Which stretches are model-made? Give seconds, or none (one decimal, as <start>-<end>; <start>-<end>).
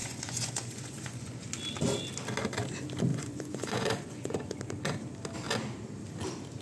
0.0-1.5; 3.1-4.6